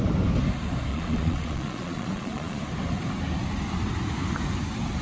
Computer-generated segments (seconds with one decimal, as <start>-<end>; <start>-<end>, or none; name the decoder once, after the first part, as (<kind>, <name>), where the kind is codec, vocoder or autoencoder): 0.9-2.6 (vocoder, Vocos)